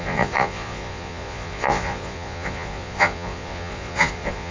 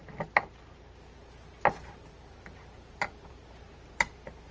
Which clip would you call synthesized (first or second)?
first